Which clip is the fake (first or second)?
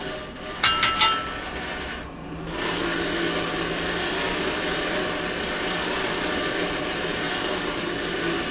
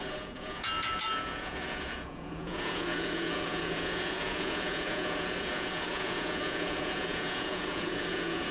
second